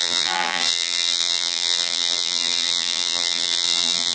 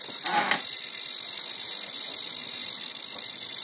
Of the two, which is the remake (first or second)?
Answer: first